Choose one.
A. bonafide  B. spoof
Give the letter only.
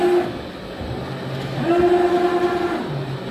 A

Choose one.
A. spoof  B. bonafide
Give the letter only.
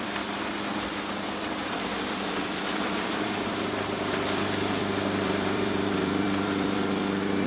A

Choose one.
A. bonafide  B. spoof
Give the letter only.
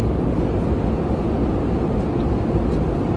A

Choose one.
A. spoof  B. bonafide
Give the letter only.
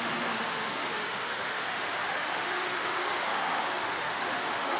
A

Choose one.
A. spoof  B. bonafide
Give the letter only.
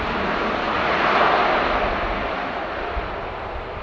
B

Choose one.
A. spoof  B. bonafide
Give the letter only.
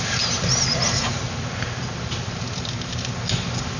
B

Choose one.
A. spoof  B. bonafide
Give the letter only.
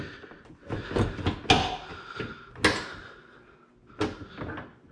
B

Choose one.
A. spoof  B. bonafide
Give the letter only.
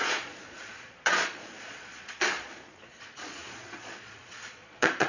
A